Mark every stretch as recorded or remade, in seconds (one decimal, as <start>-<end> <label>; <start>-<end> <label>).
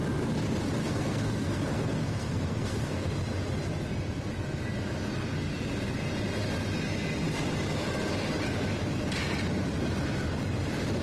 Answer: 0.0-0.8 recorded; 0.8-3.1 remade; 3.1-11.0 recorded